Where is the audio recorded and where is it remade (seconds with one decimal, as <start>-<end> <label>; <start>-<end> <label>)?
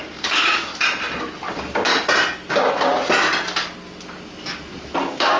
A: 0.0-0.7 remade; 0.7-1.5 recorded; 1.5-1.9 remade; 1.9-2.5 recorded; 2.5-2.9 remade; 2.9-5.0 recorded; 5.0-5.4 remade